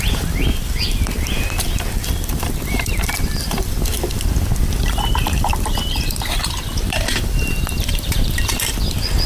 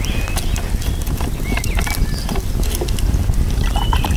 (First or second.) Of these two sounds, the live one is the second